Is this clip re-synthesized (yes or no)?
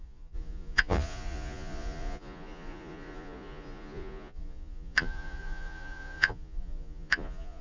yes